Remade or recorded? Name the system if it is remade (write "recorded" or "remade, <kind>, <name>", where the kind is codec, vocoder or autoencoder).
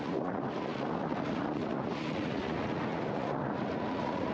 remade, vocoder, Vocos